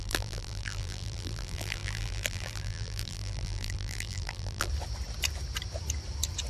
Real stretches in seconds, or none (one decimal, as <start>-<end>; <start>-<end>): 4.7-6.5